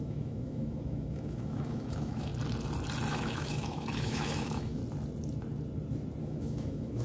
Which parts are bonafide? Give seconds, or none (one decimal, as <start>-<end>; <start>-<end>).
2.3-3.1; 4.8-6.2

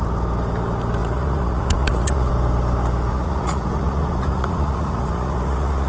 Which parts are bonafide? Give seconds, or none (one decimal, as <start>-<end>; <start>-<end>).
0.0-1.0; 2.3-3.1

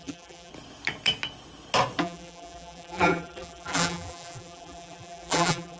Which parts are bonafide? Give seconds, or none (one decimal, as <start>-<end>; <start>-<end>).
0.5-2.0

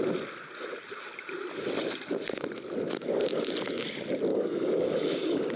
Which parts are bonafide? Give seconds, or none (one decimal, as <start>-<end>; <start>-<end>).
0.0-4.3

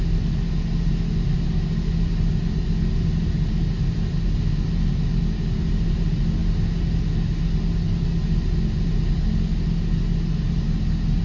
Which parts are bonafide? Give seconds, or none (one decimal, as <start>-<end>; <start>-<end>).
0.0-11.2